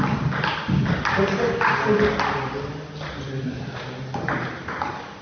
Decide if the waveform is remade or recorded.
recorded